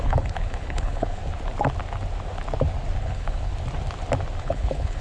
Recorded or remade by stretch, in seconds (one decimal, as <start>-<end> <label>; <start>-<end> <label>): 0.0-1.2 remade; 1.2-3.0 recorded; 3.0-3.5 remade; 3.5-4.4 recorded; 4.4-5.0 remade